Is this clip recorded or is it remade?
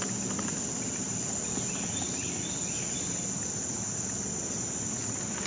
recorded